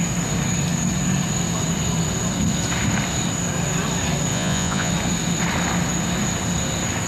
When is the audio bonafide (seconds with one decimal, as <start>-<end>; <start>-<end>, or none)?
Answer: 0.0-4.3; 4.9-7.1